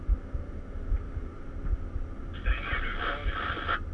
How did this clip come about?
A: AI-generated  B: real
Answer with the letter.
B